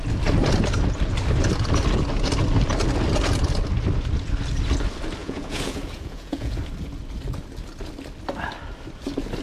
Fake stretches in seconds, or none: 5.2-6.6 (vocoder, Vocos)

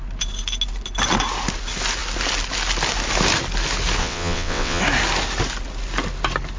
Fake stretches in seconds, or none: 4.0-4.8 (vocoder, WaveNeXt)

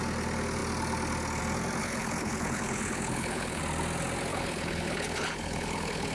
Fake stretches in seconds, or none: 1.8-3.6 (codec, HILCodec); 4.3-6.1

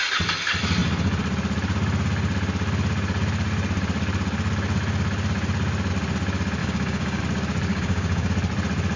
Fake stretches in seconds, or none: 6.6-7.2 (codec, DAC); 7.7-8.3

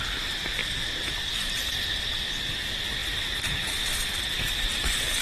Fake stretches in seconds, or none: 0.6-1.6 (vocoder, BigVGAN v2)

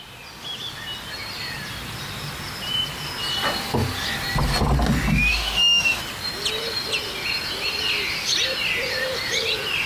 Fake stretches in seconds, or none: 5.3-6.0 (autoencoder, DAC-VAE)